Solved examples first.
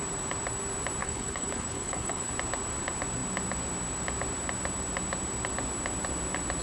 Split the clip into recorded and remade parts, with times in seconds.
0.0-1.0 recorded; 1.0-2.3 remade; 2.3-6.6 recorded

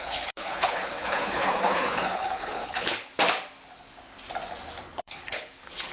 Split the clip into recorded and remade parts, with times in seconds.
0.0-3.1 remade; 3.1-4.9 recorded; 4.9-5.9 remade

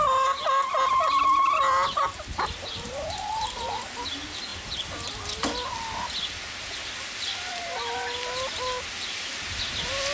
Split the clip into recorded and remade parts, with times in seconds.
0.0-10.1 recorded

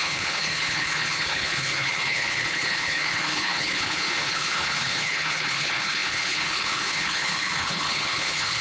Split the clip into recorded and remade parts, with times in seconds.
0.0-8.6 remade

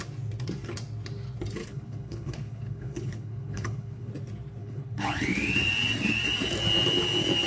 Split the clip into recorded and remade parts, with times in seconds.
0.0-1.6 recorded; 1.6-4.1 remade; 4.1-4.6 recorded; 4.6-5.2 remade; 5.2-7.5 recorded